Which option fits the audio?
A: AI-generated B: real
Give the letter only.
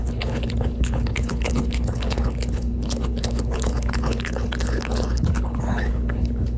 A